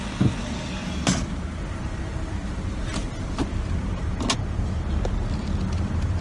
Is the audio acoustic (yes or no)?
yes